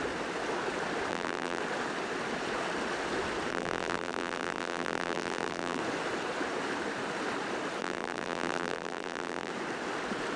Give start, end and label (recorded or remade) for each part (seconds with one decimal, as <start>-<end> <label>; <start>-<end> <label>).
0.0-1.1 recorded; 1.1-1.6 remade; 1.6-3.5 recorded; 3.5-5.8 remade; 5.8-7.8 recorded; 7.8-9.5 remade; 9.5-10.4 recorded